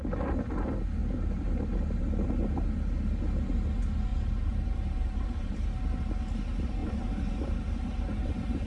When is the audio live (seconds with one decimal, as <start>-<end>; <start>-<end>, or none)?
0.0-4.1; 5.8-6.8